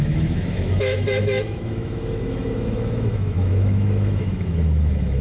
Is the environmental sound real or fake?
fake